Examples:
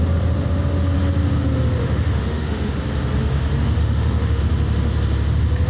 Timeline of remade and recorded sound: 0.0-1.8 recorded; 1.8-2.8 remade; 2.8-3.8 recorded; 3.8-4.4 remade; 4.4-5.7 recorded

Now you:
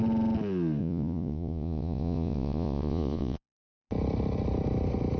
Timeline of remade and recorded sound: 0.0-0.8 recorded; 0.8-3.9 remade; 3.9-5.2 recorded

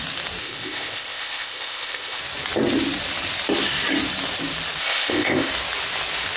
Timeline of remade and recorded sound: 0.0-0.4 recorded; 0.4-2.2 remade; 2.2-4.8 recorded; 4.8-5.5 remade; 5.5-6.4 recorded